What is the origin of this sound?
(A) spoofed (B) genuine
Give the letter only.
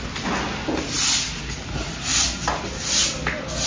B